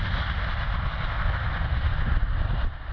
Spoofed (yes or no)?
no